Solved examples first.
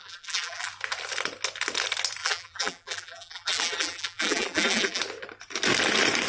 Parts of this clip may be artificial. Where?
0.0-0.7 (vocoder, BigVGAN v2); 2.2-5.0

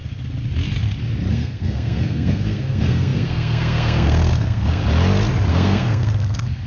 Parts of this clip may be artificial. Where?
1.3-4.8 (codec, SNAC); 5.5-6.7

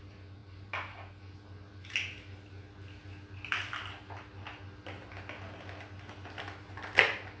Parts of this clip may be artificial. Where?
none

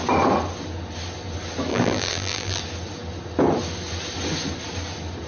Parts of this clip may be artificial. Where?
1.7-2.6 (vocoder, BigVGAN v2)